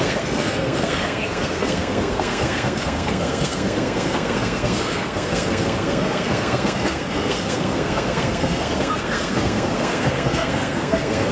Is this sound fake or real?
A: fake